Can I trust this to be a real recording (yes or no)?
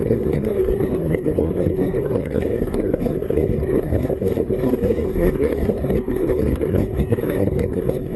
no